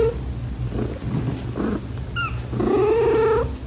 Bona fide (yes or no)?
yes